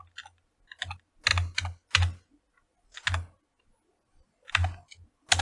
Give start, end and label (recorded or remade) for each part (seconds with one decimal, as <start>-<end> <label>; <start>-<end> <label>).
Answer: 0.0-5.4 recorded